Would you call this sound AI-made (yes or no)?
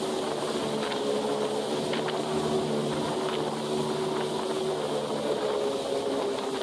no